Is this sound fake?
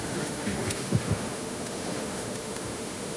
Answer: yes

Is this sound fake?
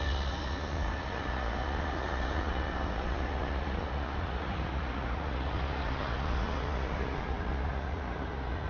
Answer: yes